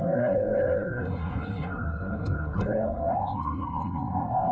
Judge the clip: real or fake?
fake